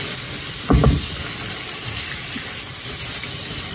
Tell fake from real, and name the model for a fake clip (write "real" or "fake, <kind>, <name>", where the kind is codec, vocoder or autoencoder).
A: real